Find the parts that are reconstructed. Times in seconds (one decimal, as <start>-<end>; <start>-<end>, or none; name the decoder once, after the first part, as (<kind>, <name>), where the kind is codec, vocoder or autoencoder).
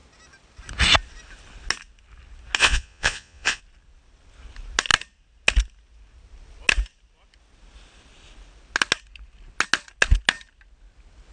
2.6-3.6 (vocoder, Vocos)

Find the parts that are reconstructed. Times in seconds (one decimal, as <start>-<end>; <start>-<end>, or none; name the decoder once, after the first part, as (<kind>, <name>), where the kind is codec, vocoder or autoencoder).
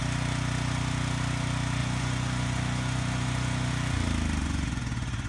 1.8-3.7 (vocoder, Vocos); 4.4-5.3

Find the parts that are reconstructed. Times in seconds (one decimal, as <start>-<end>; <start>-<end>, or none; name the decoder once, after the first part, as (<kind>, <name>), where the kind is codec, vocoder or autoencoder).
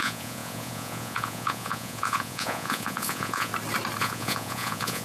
0.0-3.5 (vocoder, Vocos); 4.0-5.0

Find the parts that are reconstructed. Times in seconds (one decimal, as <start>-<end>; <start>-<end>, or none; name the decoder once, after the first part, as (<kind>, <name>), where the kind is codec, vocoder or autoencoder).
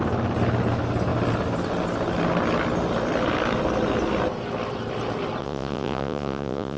5.4-6.8 (vocoder, Vocos)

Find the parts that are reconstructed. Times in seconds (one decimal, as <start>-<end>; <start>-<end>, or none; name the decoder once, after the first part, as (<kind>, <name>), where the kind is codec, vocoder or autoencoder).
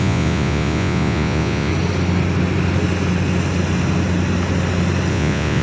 0.0-1.7 (vocoder, Vocos); 5.1-5.6